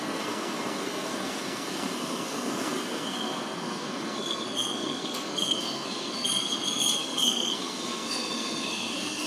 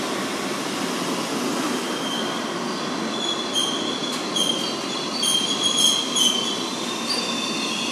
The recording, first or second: second